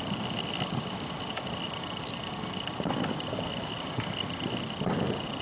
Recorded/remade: recorded